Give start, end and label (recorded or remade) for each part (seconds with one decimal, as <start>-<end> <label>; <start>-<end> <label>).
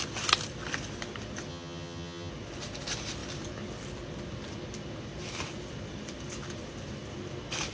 0.0-1.5 recorded; 1.5-2.3 remade; 2.3-7.7 recorded